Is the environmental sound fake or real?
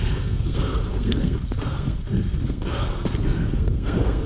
fake